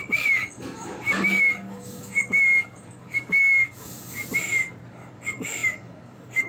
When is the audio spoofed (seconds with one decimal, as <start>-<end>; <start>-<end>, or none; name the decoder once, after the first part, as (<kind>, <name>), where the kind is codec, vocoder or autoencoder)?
0.0-4.2 (codec, DAC); 4.9-6.5